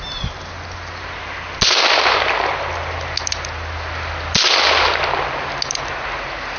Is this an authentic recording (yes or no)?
yes